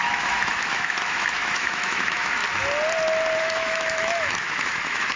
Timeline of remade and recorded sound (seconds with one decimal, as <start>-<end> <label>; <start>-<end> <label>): 0.0-2.4 remade; 2.4-3.4 recorded; 3.4-5.2 remade